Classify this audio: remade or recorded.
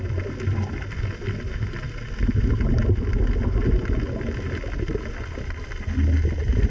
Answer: recorded